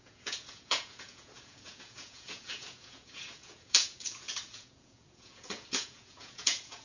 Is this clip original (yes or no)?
no